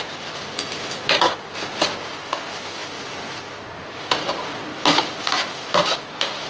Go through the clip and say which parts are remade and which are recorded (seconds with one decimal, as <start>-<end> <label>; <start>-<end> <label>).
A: 0.0-6.5 recorded